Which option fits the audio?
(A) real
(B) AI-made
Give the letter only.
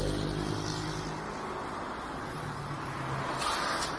A